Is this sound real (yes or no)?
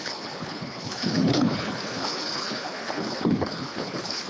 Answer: no